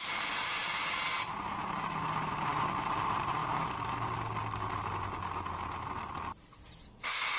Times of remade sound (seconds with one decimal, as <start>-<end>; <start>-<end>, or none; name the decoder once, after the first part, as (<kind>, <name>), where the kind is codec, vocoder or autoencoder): none